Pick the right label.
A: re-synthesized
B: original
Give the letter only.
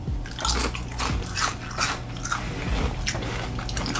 B